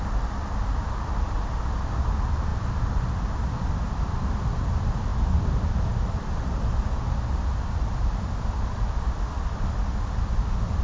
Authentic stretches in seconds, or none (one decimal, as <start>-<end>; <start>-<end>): 2.5-3.5